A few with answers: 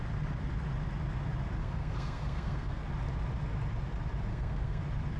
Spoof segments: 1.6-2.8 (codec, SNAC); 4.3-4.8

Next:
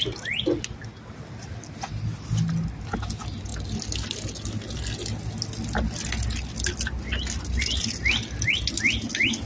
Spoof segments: none

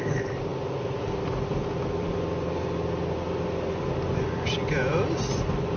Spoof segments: none

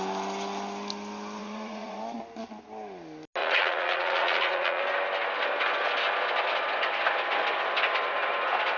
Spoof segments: 1.4-2.0 (vocoder, Vocos); 3.4-4.8

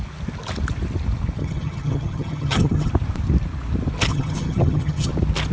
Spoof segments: 1.4-2.9 (vocoder, HiFi-GAN); 4.1-5.1